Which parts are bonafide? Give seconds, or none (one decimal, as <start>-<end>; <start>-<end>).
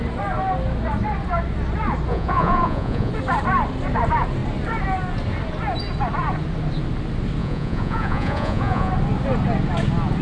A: 0.0-2.1; 3.1-7.4; 8.9-10.2